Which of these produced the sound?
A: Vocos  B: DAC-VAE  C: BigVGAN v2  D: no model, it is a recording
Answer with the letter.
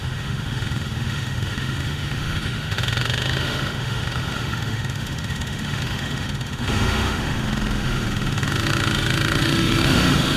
B